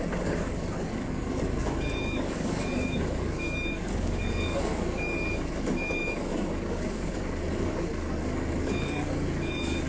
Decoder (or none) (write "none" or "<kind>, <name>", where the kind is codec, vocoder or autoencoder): codec, DAC